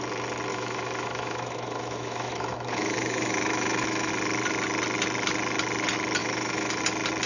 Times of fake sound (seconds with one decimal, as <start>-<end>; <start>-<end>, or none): 0.5-4.1; 6.2-6.8